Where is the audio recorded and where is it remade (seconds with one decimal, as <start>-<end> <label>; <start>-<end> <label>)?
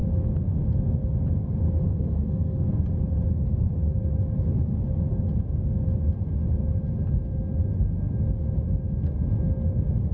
0.0-1.8 recorded; 1.8-2.8 remade; 2.8-10.1 recorded